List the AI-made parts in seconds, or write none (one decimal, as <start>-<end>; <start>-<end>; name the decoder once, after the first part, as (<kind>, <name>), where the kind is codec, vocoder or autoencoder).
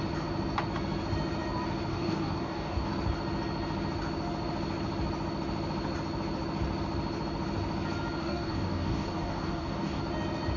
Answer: 1.9-2.9 (codec, DAC); 8.2-10.0